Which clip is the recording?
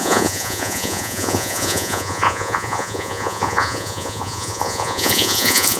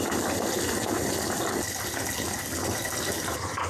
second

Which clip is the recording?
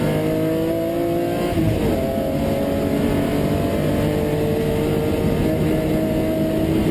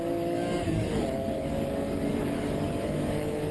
first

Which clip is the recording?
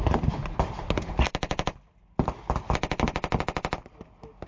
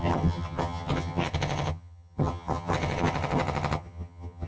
first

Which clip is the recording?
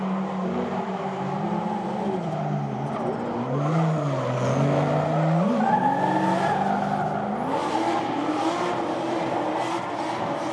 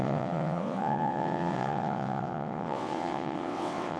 first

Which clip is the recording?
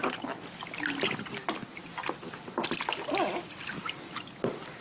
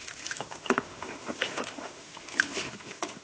first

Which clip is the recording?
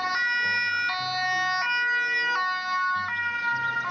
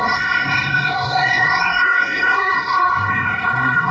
first